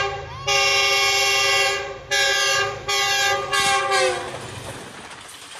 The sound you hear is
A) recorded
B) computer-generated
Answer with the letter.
A